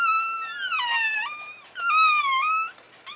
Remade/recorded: recorded